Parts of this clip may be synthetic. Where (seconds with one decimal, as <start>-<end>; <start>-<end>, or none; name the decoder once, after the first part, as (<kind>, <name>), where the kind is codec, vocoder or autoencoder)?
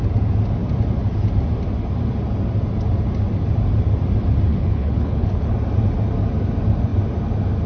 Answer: 4.5-5.5 (codec, HILCodec)